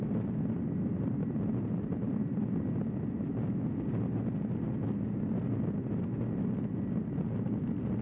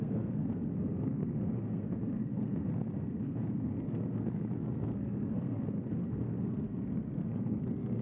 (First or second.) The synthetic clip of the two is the second